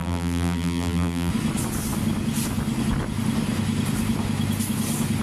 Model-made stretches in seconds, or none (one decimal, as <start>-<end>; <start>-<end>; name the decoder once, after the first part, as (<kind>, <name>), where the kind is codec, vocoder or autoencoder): 0.0-1.3 (vocoder, BigVGAN v2)

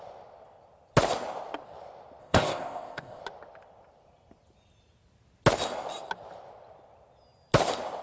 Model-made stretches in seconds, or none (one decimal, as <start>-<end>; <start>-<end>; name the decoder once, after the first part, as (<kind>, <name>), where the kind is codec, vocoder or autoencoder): 2.2-3.2 (codec, ZipCodec)